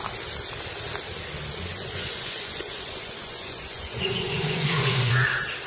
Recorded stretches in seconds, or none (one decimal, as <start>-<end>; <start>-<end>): 0.0-1.7; 5.1-5.7